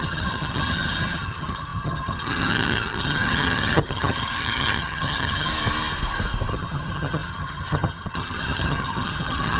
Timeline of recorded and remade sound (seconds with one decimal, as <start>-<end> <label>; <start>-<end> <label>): 0.0-5.5 remade; 5.5-6.5 recorded; 6.5-9.6 remade